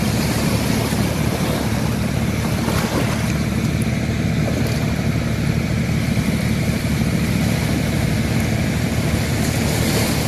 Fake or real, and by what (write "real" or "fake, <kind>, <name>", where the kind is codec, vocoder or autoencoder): real